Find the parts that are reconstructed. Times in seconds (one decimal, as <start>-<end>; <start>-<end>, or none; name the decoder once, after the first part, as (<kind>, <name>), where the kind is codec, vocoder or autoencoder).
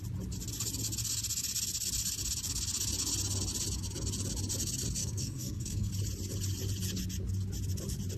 5.0-5.9 (codec, SNAC)